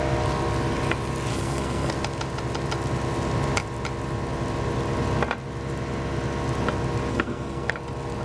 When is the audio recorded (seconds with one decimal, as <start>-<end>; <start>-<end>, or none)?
0.0-1.3; 1.9-7.1; 7.7-8.2